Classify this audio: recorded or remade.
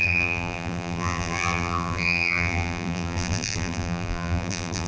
remade